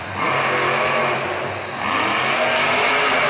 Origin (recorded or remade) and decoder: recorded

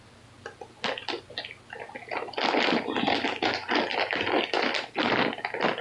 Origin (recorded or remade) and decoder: recorded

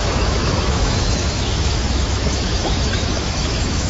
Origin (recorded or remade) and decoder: remade, autoencoder, DAC-VAE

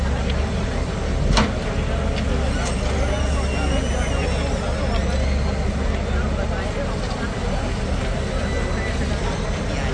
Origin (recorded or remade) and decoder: recorded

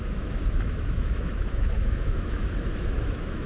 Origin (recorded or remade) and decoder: remade, autoencoder, DAC-VAE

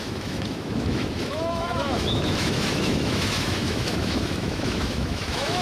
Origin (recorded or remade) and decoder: remade, autoencoder, DAC-VAE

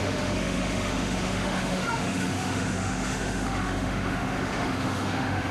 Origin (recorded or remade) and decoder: remade, autoencoder, DAC-VAE